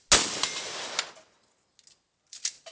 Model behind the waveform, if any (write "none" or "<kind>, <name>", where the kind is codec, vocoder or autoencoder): none